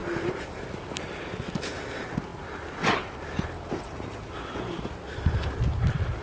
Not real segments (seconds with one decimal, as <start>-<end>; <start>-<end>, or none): none

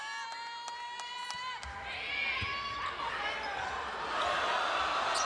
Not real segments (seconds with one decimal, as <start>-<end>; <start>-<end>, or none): none

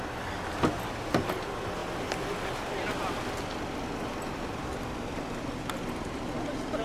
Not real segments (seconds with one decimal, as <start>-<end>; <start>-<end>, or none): none

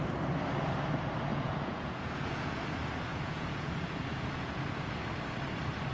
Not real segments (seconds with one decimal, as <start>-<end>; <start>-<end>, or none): 1.3-2.6; 3.1-4.9

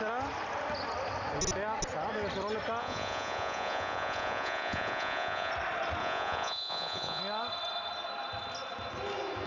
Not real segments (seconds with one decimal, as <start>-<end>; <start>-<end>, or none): 2.8-5.5; 6.0-7.2